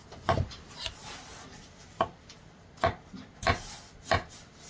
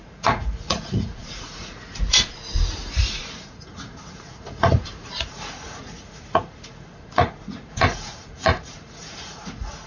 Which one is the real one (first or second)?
first